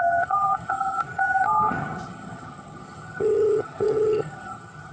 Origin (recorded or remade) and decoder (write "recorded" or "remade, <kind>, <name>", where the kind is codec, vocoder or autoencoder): remade, vocoder, HiFi-GAN